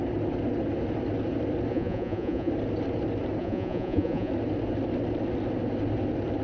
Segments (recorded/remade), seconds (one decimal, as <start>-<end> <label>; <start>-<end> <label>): 0.0-1.7 recorded; 1.7-2.5 remade; 2.5-3.4 recorded; 3.4-4.3 remade; 4.3-6.4 recorded